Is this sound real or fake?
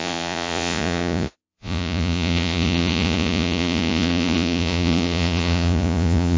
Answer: fake